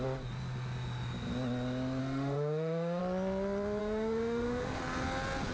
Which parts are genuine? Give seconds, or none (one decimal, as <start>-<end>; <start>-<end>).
0.0-2.0; 3.0-3.8; 4.8-5.5